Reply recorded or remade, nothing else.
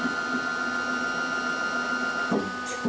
recorded